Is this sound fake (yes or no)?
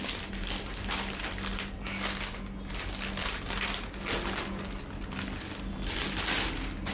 no